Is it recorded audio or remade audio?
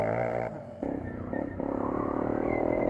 remade